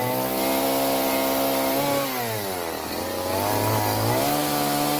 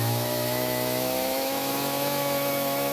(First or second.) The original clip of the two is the first